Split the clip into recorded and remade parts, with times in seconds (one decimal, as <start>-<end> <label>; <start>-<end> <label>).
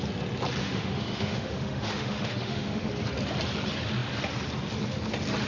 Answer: 0.0-0.6 recorded; 0.6-2.9 remade; 2.9-5.5 recorded